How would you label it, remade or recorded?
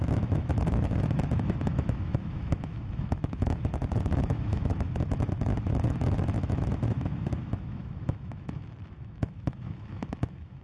remade